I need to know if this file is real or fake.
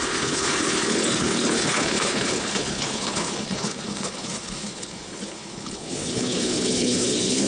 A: fake